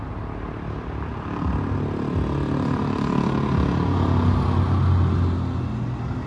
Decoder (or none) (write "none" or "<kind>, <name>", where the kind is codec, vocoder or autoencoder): none